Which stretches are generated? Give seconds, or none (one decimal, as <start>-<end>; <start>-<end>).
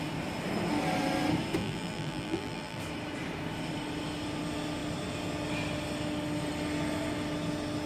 1.6-2.8